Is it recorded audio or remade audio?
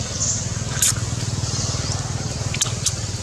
recorded